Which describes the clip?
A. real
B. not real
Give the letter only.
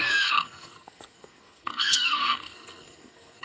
B